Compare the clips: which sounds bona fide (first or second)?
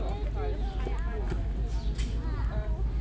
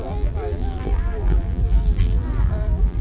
first